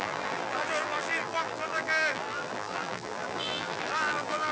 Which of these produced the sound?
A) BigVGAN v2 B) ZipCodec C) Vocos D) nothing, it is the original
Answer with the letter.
A